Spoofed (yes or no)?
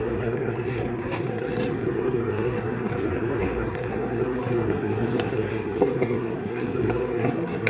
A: yes